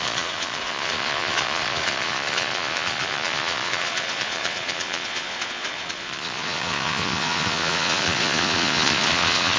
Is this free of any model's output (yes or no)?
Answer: no